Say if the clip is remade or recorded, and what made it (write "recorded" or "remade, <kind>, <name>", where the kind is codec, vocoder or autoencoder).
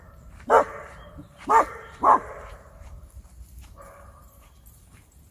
remade, vocoder, BigVGAN v2